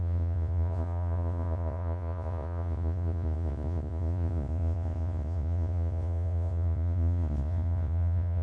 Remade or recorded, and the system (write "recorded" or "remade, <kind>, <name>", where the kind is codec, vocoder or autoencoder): remade, vocoder, Vocos